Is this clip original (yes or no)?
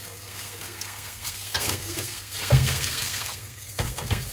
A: no